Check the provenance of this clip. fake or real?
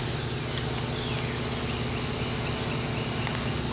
real